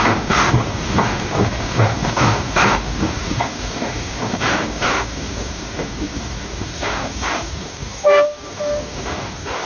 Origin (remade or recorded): remade